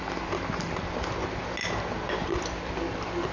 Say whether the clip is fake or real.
real